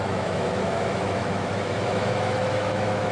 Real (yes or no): no